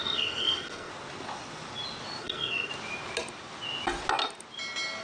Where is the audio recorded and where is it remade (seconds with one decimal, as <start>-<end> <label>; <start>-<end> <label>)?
0.0-0.9 remade; 0.9-2.2 recorded; 2.2-2.7 remade; 2.7-5.0 recorded